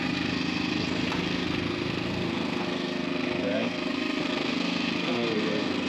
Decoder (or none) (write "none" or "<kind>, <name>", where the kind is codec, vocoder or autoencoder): codec, SNAC